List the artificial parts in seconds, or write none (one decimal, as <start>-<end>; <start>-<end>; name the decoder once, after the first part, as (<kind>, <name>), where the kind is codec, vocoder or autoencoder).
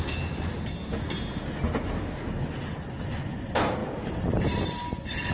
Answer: 3.8-4.6 (vocoder, BigVGAN v2)